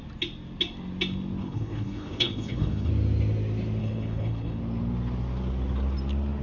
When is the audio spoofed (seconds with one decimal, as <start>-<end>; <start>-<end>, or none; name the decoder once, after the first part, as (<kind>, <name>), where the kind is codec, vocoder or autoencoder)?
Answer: 1.4-2.9 (codec, HILCodec); 3.8-4.6